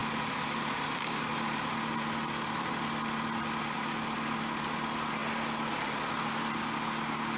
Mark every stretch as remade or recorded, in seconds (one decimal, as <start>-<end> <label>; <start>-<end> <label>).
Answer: 0.0-7.4 recorded